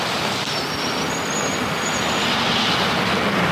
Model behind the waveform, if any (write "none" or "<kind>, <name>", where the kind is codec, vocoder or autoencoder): none